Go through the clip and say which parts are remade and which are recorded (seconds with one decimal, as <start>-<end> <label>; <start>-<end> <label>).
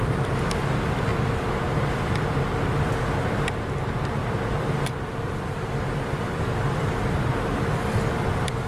0.0-1.1 recorded; 1.1-1.9 remade; 1.9-4.2 recorded; 4.2-7.3 remade; 7.3-8.7 recorded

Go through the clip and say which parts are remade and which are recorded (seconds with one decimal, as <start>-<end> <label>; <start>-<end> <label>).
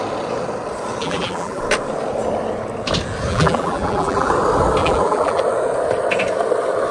0.0-1.0 recorded; 1.0-1.6 remade; 1.6-3.3 recorded; 3.3-4.3 remade; 4.3-4.8 recorded; 4.8-5.4 remade; 5.4-6.9 recorded